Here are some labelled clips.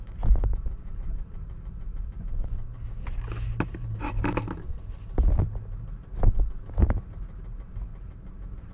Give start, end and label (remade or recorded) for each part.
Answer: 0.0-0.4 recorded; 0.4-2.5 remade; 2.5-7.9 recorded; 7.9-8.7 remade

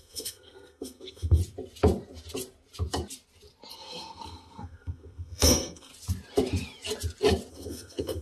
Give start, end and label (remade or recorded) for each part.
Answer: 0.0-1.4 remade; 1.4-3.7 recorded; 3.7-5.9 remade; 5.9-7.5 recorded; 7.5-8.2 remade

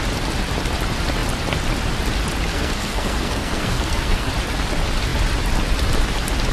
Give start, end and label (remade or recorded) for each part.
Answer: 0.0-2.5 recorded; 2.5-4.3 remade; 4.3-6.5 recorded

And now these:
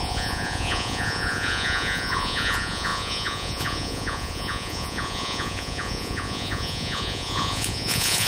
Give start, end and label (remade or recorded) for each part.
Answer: 0.0-8.3 remade

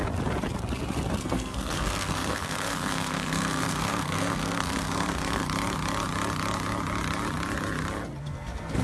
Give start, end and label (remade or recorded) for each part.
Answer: 0.0-1.2 recorded; 1.2-5.4 remade; 5.4-8.2 recorded; 8.2-8.8 remade

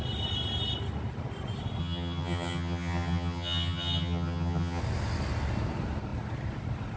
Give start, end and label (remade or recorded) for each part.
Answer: 0.0-1.8 recorded; 1.8-4.8 remade; 4.8-7.0 recorded

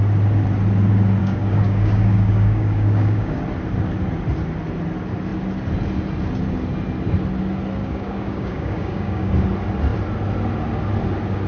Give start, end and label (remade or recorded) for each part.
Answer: 0.0-1.2 recorded; 1.2-3.4 remade; 3.4-7.8 recorded; 7.8-9.3 remade; 9.3-11.5 recorded

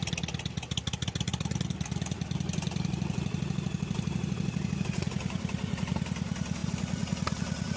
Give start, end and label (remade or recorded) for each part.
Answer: 0.0-7.8 recorded